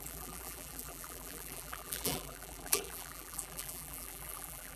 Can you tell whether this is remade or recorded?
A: remade